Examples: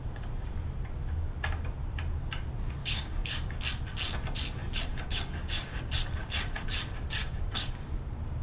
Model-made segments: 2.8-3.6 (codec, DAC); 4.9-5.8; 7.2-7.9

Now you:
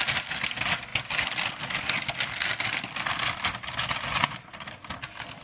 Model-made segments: none

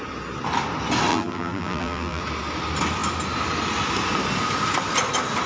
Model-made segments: 1.1-2.2 (vocoder, BigVGAN v2)

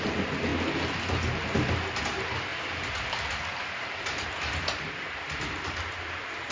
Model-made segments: none

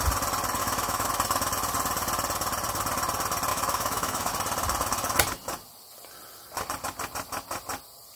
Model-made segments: 0.6-1.1 (autoencoder, DAC-VAE); 3.5-4.3

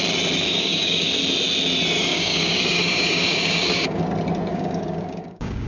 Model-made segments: 0.5-1.1 (codec, DAC); 2.1-4.0; 4.5-5.7

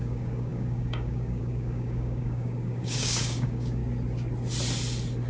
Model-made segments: 0.0-3.8 (codec, DAC)

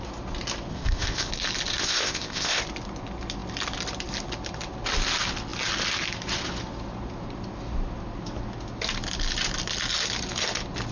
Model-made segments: 0.7-1.3 (codec, ZipCodec); 1.8-2.6